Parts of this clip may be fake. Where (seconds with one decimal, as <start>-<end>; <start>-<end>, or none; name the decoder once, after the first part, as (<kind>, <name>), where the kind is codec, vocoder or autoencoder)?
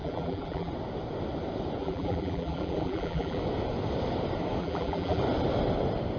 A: 0.0-0.7 (vocoder, BigVGAN v2); 1.8-3.4; 4.6-5.2